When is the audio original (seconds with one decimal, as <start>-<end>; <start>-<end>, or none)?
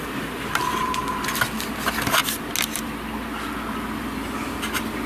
0.0-5.1